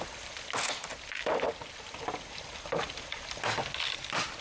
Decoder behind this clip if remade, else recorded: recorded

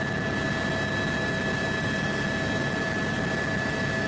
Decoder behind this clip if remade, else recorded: recorded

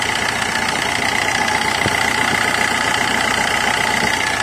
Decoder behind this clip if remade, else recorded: recorded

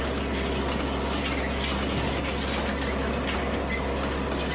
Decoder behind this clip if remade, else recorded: recorded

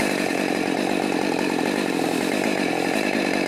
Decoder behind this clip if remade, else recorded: remade, vocoder, BigVGAN v2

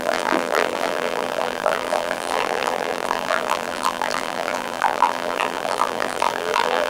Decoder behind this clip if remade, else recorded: remade, vocoder, BigVGAN v2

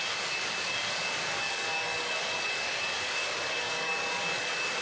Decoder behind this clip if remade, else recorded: remade, codec, DAC